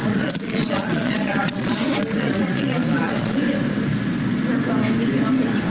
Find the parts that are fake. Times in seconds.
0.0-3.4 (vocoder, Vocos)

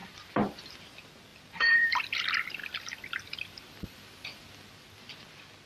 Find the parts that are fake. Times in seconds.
0.0-0.8 (vocoder, BigVGAN v2); 1.3-2.0; 2.6-3.6

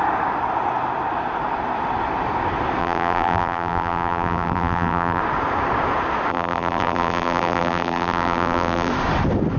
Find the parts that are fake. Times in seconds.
2.8-5.2 (vocoder, BigVGAN v2); 6.3-8.9

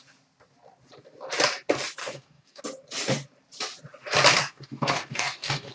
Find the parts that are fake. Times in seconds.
2.0-2.6 (codec, DAC); 4.4-5.7

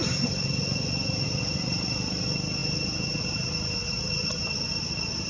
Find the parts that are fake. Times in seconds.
none

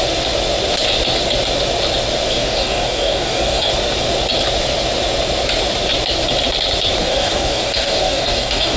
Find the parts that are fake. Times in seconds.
2.3-3.7 (codec, DAC); 7.0-8.8

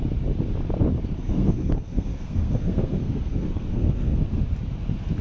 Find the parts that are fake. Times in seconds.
1.3-4.4 (codec, SNAC)